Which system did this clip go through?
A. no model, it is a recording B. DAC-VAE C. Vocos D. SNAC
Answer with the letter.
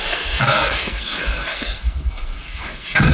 D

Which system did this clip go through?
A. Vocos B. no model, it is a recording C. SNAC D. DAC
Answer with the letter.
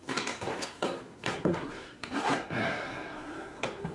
C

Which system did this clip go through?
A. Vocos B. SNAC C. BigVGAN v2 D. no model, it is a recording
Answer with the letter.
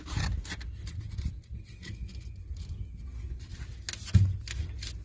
D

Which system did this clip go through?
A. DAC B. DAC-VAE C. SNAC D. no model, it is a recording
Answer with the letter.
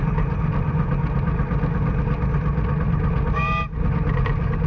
D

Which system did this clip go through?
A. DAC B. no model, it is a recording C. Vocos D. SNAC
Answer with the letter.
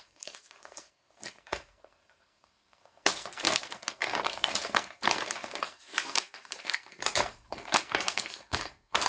D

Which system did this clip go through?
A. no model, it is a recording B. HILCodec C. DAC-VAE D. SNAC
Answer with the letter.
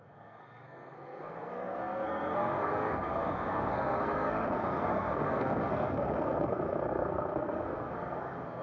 D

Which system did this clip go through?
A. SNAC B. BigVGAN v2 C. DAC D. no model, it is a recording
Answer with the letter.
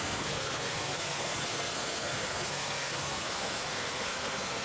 A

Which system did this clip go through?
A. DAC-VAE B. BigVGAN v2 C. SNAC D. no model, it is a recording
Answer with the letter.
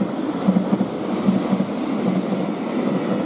D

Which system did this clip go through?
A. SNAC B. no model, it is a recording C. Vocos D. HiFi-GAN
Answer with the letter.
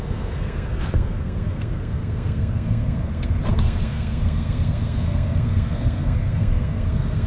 A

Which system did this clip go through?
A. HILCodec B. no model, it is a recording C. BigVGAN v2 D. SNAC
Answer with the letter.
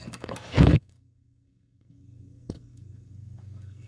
D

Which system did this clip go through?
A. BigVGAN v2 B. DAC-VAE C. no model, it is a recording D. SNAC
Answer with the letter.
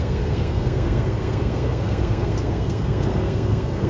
D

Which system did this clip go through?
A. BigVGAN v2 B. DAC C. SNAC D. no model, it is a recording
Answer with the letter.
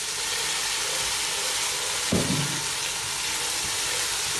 D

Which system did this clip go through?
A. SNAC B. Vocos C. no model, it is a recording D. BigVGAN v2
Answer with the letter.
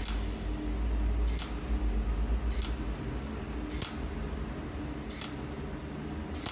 C